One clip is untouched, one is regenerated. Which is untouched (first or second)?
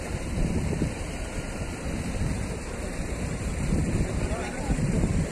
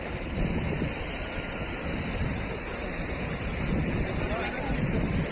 second